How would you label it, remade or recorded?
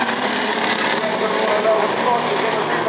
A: recorded